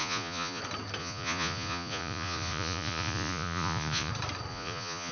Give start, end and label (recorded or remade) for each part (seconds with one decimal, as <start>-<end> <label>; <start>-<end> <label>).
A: 0.0-0.6 remade; 0.6-1.0 recorded; 1.0-4.1 remade; 4.1-4.5 recorded; 4.5-5.1 remade